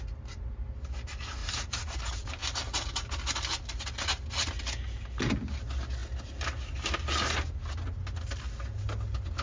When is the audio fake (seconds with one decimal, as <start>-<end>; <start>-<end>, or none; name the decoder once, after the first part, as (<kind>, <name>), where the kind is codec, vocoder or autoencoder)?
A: 1.4-2.0 (vocoder, BigVGAN v2)

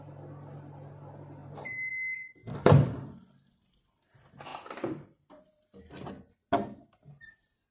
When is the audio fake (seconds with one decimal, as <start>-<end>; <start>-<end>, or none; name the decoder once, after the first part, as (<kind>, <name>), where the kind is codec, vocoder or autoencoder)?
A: 1.4-1.9 (vocoder, BigVGAN v2); 2.4-4.1; 4.5-6.1

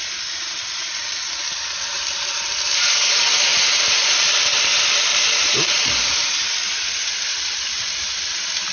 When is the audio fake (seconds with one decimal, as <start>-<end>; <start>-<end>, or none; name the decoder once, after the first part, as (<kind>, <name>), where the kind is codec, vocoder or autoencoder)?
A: 0.0-8.7 (vocoder, BigVGAN v2)